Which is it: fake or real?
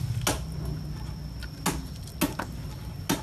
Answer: real